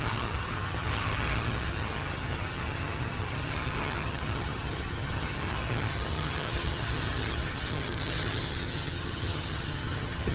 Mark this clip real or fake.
fake